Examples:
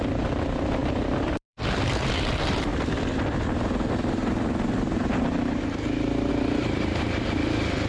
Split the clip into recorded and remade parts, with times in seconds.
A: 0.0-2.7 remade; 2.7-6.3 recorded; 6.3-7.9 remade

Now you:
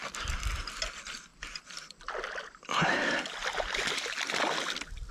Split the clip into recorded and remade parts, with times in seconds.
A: 0.0-1.3 recorded; 1.3-4.4 remade; 4.4-5.1 recorded

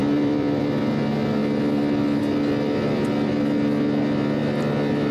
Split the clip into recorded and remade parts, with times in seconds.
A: 0.0-0.6 remade; 0.6-5.1 recorded

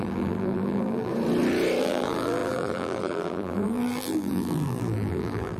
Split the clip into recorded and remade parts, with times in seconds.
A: 0.0-1.1 remade; 1.1-1.8 recorded; 1.8-5.6 remade

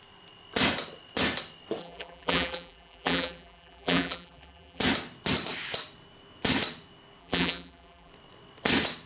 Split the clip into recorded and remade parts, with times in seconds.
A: 0.0-1.8 recorded; 1.8-4.8 remade; 4.8-7.2 recorded; 7.2-8.1 remade; 8.1-9.1 recorded